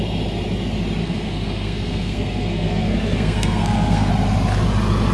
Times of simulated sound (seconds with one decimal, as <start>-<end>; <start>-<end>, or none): 1.0-4.1